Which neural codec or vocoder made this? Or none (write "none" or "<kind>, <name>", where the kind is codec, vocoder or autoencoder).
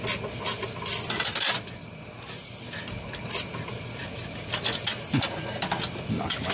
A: none